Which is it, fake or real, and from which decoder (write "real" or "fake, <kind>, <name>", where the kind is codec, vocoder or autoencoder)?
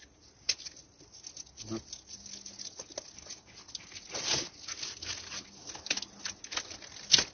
real